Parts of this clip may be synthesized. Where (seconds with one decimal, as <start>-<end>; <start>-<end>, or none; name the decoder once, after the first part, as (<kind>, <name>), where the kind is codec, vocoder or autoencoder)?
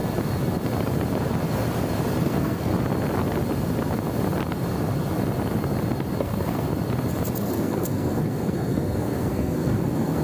2.2-2.7 (codec, SNAC); 6.2-6.7; 7.4-10.2